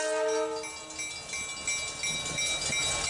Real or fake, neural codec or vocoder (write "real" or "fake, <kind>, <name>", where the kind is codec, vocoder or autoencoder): real